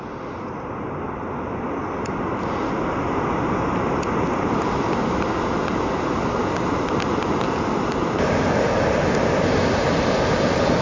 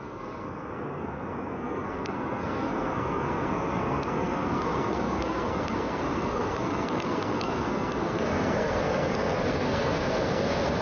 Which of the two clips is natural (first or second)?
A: first